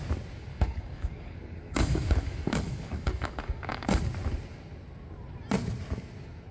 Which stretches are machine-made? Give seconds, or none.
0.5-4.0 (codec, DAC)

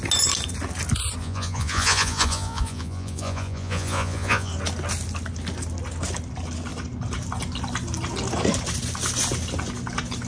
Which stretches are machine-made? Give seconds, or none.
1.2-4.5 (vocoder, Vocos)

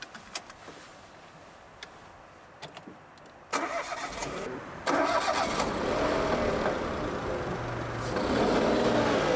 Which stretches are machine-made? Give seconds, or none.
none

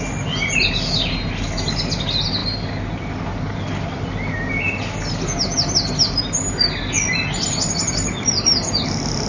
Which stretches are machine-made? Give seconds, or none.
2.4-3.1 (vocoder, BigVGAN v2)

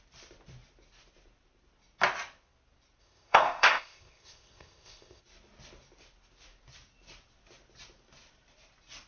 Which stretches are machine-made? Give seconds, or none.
3.0-5.2 (codec, ZipCodec)

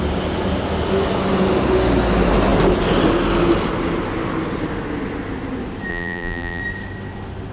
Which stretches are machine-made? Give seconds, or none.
5.9-6.6 (vocoder, BigVGAN v2)

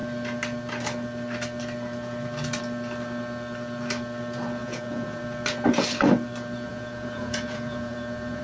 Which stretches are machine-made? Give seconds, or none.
4.6-5.2 (vocoder, Vocos); 6.7-8.4